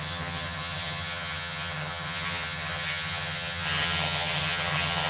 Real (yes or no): no